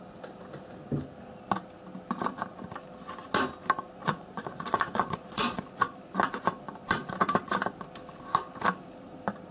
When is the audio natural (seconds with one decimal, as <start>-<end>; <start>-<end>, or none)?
0.0-4.0; 5.6-9.5

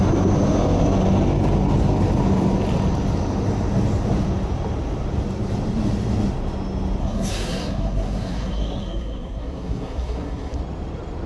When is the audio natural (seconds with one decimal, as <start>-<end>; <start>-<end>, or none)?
0.0-7.0; 10.6-11.3

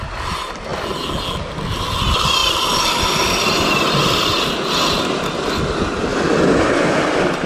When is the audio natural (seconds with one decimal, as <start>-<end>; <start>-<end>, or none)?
0.0-6.1; 6.7-7.5

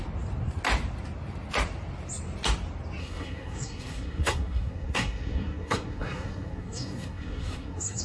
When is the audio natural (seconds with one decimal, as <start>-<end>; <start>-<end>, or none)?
0.0-3.0

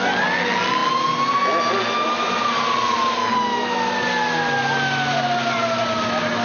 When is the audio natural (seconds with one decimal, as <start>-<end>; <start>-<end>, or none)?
0.0-6.4

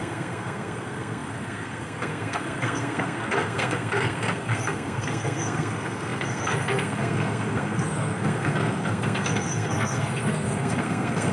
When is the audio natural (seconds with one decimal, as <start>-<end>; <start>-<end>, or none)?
none

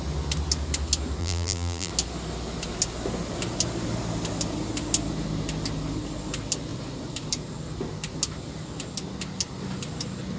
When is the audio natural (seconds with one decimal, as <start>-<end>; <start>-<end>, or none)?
0.0-1.2; 1.9-10.4